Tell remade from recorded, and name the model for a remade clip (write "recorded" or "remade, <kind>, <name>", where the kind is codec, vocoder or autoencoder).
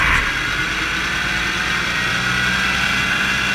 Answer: recorded